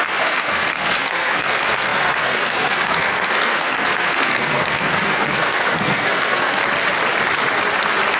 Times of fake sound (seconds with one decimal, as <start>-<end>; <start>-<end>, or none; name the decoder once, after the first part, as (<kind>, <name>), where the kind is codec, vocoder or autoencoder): 0.0-6.6 (codec, SNAC)